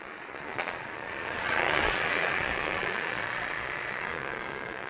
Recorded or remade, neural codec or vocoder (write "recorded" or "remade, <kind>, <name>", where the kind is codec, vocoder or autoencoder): remade, vocoder, Vocos